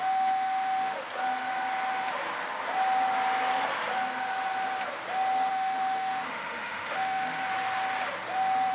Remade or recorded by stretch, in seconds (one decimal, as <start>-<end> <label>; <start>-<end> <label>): 0.0-1.0 remade; 1.0-5.5 recorded; 5.5-7.4 remade; 7.4-8.7 recorded